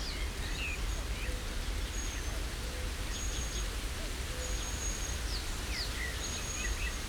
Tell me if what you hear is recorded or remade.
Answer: recorded